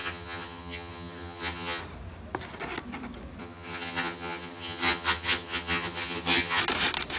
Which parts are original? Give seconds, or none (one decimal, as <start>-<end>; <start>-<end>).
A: 1.8-3.4; 6.6-7.2